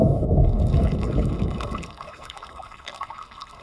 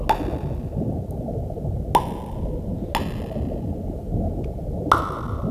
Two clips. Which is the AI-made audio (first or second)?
first